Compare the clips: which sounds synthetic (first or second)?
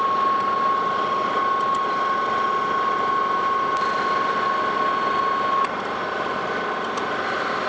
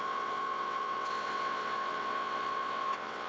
second